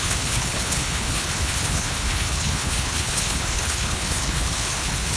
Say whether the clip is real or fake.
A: fake